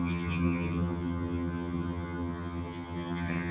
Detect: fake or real fake